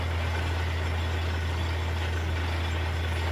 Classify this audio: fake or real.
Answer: real